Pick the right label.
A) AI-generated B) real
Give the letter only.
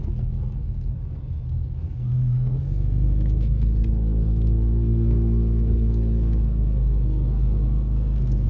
A